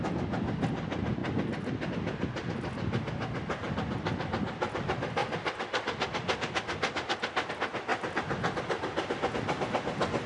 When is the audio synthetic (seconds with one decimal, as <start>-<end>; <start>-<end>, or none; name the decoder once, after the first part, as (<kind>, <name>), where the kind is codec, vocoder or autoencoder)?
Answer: 1.2-1.9 (vocoder, BigVGAN v2); 5.2-7.5